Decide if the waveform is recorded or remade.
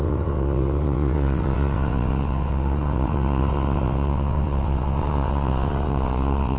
remade